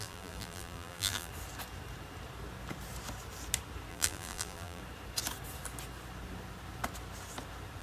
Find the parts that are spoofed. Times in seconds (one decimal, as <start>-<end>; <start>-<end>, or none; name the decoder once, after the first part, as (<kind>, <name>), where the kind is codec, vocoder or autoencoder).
0.0-1.3 (vocoder, BigVGAN v2); 3.9-4.8

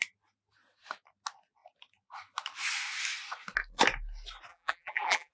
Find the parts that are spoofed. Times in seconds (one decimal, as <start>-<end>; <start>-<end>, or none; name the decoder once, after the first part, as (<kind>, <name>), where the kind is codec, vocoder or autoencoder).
4.5-5.3 (vocoder, BigVGAN v2)

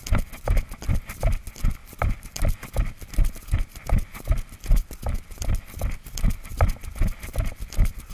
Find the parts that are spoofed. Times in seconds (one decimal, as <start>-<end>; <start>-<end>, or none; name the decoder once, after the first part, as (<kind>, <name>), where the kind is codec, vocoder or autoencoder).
1.8-3.3 (vocoder, BigVGAN v2); 4.1-5.6

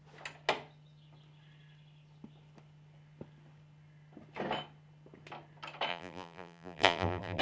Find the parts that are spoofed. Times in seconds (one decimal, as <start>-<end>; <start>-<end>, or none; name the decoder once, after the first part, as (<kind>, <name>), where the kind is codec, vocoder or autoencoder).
5.9-7.4 (vocoder, BigVGAN v2)

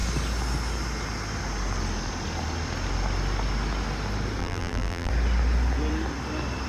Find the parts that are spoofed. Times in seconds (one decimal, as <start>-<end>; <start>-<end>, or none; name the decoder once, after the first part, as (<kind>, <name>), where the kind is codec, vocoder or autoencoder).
4.4-5.1 (vocoder, BigVGAN v2)